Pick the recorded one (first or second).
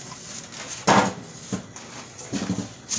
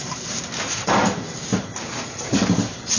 first